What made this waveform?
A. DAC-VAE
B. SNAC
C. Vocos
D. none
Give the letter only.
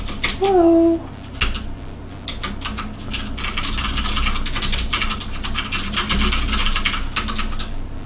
D